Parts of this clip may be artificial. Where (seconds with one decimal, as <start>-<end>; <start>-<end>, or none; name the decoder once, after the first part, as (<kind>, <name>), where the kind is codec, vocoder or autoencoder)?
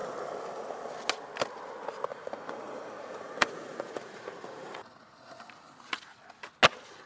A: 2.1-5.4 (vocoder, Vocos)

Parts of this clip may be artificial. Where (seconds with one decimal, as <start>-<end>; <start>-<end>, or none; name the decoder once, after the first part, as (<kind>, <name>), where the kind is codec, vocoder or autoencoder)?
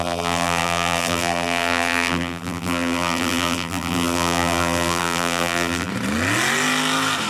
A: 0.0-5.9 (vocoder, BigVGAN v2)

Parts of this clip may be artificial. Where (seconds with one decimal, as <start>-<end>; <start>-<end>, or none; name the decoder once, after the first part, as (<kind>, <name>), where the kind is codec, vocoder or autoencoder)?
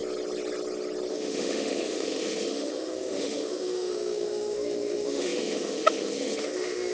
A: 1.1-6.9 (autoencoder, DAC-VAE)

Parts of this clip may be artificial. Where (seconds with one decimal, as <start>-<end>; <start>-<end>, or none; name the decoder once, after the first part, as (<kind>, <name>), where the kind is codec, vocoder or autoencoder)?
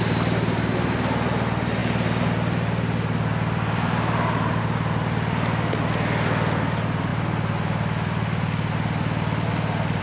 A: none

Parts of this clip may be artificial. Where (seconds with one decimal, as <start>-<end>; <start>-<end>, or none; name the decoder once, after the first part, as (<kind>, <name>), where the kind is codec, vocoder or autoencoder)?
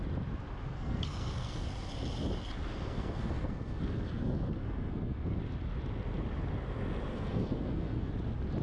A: 0.7-1.7 (codec, SNAC); 2.7-5.4; 7.1-8.1